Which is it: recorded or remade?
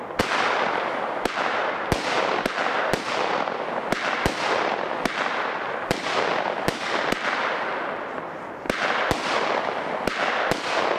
recorded